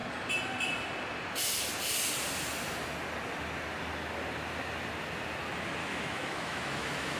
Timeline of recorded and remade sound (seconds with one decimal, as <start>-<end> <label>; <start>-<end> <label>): 0.0-5.8 recorded; 5.8-7.2 remade